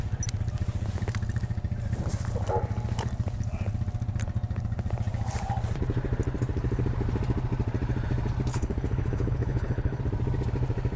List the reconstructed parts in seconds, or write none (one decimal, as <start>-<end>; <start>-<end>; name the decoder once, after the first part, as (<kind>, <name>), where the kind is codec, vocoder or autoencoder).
8.5-10.0 (codec, HILCodec)